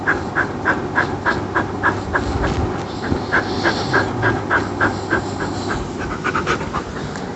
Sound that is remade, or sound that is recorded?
recorded